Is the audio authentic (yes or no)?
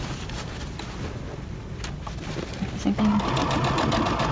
yes